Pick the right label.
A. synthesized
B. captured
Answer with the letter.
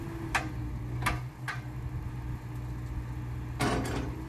B